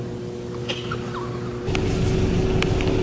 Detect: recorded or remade recorded